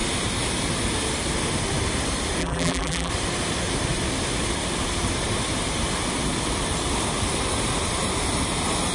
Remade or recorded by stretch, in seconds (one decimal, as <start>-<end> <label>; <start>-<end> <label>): 0.0-2.4 recorded; 2.4-3.1 remade; 3.1-8.9 recorded